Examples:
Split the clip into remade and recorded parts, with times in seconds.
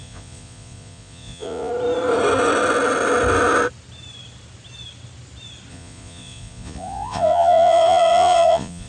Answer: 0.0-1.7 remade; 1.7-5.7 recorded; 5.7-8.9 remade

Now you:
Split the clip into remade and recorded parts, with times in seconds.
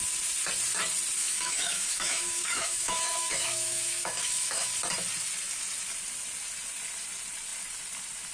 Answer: 0.0-1.2 recorded; 1.2-4.7 remade; 4.7-8.3 recorded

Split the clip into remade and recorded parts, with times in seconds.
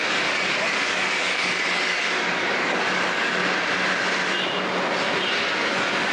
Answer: 0.0-3.4 remade; 3.4-5.6 recorded; 5.6-6.1 remade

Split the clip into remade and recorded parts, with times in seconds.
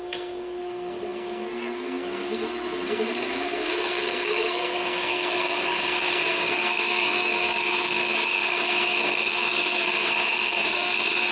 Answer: 0.0-11.3 remade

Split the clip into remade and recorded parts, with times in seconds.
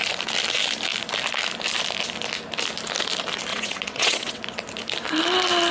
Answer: 0.0-3.5 recorded; 3.5-4.4 remade; 4.4-5.7 recorded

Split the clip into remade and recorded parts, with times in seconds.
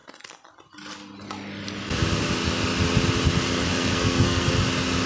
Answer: 0.0-3.7 recorded; 3.7-4.5 remade; 4.5-5.1 recorded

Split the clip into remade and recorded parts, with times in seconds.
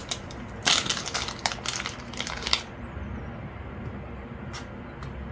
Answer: 0.0-5.3 recorded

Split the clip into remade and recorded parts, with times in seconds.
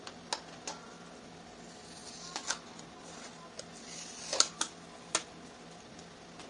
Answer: 0.0-6.5 recorded